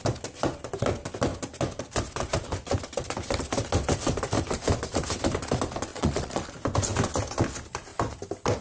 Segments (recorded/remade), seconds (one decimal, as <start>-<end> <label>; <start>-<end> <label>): 0.0-5.9 recorded; 5.9-6.5 remade; 6.5-8.6 recorded

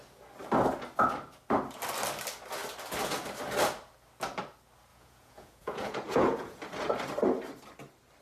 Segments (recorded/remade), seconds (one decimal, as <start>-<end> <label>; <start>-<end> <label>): 0.0-4.9 recorded; 4.9-6.6 remade; 6.6-8.2 recorded

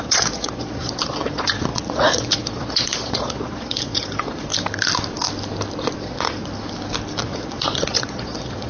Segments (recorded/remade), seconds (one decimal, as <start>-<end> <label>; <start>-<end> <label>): 0.0-4.5 remade; 4.5-6.0 recorded; 6.0-6.5 remade; 6.5-7.2 recorded; 7.2-8.7 remade

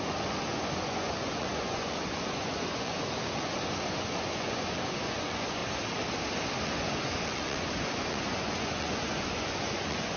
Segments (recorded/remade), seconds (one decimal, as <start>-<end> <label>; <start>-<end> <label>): 0.0-5.6 remade; 5.6-6.6 recorded; 6.6-10.2 remade